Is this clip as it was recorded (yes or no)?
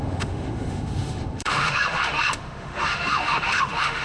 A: no